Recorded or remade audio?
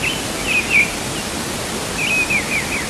recorded